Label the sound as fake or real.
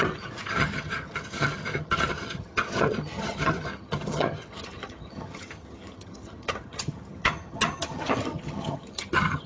fake